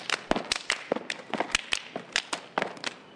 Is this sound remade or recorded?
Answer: recorded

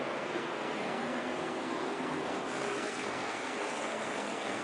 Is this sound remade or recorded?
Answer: remade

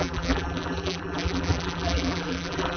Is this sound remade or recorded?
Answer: remade